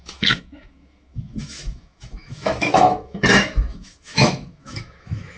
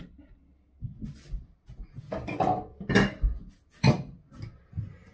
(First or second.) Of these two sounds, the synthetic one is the first